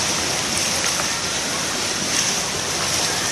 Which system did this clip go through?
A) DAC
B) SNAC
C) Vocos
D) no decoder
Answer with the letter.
D